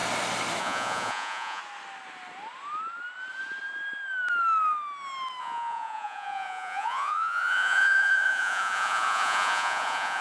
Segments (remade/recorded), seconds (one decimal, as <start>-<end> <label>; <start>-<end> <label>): 0.0-0.6 recorded; 0.6-1.6 remade; 1.6-5.4 recorded; 5.4-10.2 remade